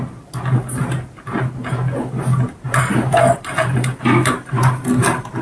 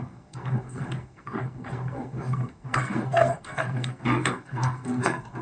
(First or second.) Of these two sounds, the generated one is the second